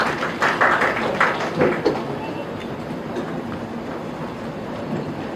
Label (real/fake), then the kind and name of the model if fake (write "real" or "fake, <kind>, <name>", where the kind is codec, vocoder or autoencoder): real